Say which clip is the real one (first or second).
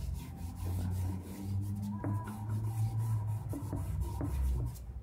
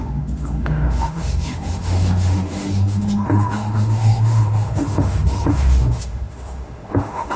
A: first